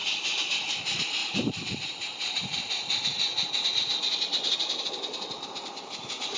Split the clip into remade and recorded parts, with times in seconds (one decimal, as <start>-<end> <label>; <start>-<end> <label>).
0.0-0.5 remade; 0.5-1.2 recorded; 1.2-2.7 remade; 2.7-6.4 recorded